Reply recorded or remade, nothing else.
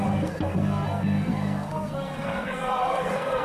remade